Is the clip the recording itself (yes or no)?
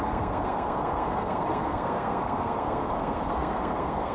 no